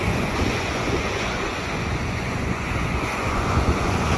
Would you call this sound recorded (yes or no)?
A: no